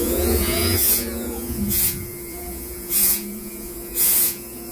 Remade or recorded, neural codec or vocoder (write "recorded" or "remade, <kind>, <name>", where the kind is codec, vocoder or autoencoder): remade, vocoder, Vocos